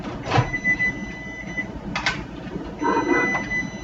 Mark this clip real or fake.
real